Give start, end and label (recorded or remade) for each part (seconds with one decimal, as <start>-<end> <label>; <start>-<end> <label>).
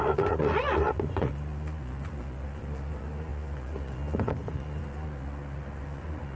0.0-6.4 remade